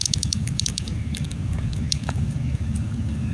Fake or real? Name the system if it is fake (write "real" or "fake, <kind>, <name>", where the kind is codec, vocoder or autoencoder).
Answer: fake, codec, DAC